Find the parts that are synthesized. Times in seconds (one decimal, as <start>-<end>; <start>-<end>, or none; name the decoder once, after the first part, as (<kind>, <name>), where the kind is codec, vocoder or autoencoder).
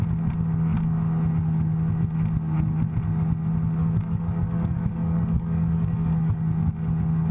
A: 3.8-6.7 (codec, DAC)